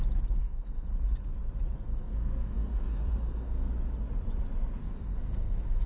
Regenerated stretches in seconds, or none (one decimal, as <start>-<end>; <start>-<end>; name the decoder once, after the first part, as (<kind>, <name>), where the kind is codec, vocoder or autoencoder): 0.4-0.9 (codec, SNAC); 1.9-3.7; 4.8-5.9